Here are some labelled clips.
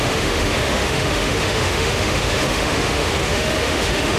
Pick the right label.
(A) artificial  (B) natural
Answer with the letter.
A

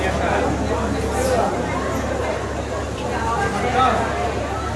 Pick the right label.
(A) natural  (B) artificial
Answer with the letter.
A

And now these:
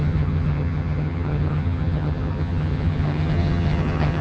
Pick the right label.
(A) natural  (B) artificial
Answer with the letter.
B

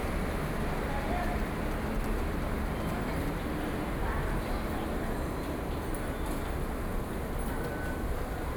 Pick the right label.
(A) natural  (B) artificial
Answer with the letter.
A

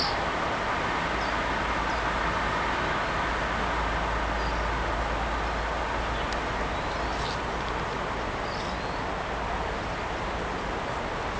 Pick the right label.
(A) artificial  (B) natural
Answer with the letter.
B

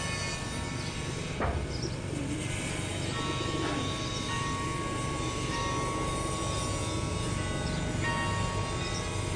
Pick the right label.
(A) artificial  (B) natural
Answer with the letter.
B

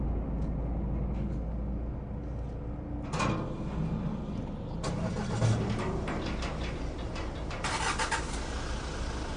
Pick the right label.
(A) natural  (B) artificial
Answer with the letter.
A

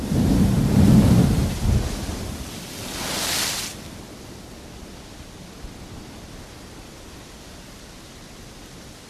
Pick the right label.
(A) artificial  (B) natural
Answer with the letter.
B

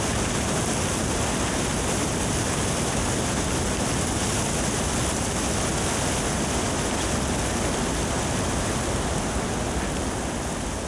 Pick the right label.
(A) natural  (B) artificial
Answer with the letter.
A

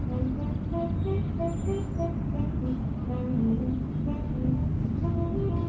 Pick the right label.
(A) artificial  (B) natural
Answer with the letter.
B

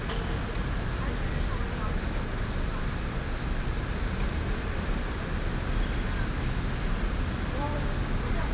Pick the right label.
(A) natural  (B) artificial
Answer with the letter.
A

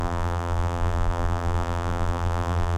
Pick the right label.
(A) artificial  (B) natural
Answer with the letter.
A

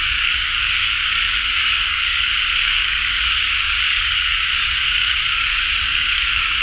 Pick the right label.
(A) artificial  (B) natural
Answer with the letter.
A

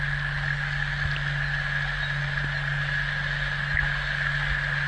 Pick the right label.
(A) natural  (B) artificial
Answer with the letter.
A